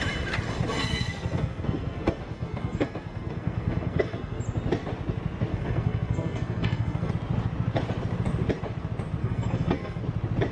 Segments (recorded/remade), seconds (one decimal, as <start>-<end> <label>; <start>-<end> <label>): 0.0-0.8 recorded; 0.8-4.4 remade; 4.4-5.5 recorded; 5.5-7.1 remade; 7.1-9.2 recorded; 9.2-10.0 remade; 10.0-10.5 recorded